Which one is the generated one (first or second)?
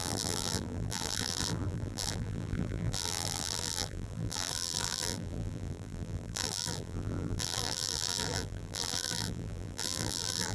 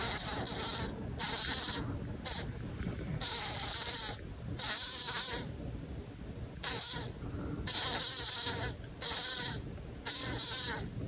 first